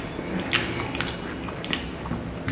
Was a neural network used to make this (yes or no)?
no